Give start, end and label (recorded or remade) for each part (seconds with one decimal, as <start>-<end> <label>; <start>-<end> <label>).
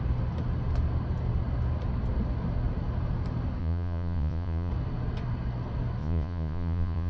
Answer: 0.0-3.6 recorded; 3.6-4.7 remade; 4.7-6.0 recorded; 6.0-7.1 remade